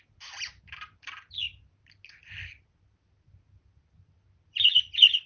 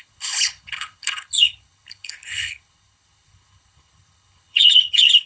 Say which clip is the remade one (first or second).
second